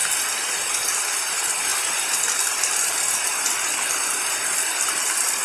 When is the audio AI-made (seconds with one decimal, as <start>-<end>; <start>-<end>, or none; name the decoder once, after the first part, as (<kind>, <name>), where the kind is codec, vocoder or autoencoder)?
none